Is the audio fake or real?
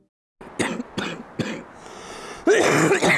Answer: real